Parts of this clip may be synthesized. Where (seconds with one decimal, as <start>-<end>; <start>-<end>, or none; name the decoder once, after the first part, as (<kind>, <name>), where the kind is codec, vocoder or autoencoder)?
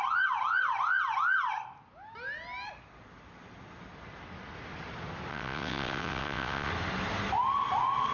5.3-6.7 (vocoder, WaveNeXt)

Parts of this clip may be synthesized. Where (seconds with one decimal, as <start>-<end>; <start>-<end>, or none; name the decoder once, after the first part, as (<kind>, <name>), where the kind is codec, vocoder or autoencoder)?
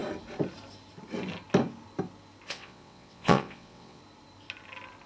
2.5-4.0 (vocoder, WaveNeXt)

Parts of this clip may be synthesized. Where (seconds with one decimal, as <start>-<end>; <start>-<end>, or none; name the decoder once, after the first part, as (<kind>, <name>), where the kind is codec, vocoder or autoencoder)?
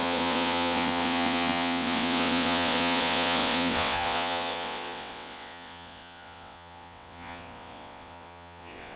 0.0-9.0 (vocoder, WaveNeXt)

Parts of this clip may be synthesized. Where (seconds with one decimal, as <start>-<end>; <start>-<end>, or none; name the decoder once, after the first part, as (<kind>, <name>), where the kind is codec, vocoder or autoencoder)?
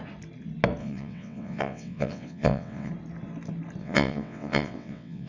0.8-2.9 (vocoder, WaveNeXt); 3.8-5.3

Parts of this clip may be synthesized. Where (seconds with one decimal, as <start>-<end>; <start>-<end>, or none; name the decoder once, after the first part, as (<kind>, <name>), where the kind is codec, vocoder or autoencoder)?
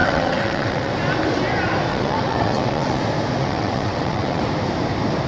0.0-0.9 (vocoder, WaveNeXt); 1.9-3.0; 3.4-4.4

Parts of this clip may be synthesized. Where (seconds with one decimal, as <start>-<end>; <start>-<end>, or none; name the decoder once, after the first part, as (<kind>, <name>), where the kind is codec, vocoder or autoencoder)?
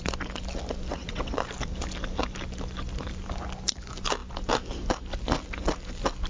0.9-1.4 (vocoder, WaveNeXt)